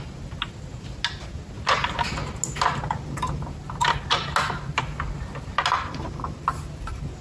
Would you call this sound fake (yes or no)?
no